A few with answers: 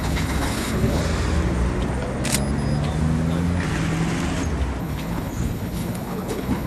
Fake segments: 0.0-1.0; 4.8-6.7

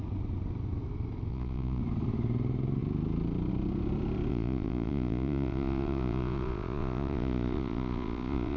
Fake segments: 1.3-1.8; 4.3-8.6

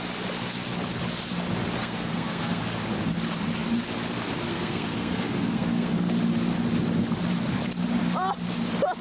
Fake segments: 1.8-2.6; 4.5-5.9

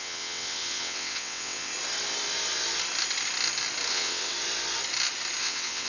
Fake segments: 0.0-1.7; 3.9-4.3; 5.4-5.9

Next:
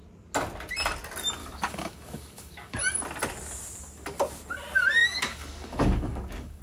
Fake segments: 1.4-2.8; 5.0-6.6